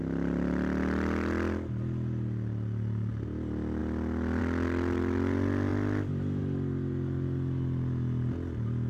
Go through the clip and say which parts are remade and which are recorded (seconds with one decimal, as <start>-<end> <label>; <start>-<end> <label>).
0.0-8.9 recorded